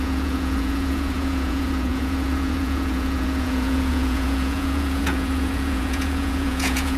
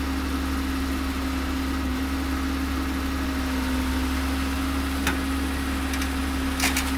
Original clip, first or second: second